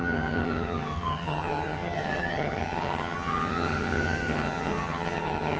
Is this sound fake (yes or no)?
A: yes